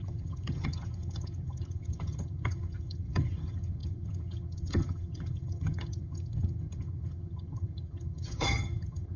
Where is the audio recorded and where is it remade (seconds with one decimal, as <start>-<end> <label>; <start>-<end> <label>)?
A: 0.0-9.2 remade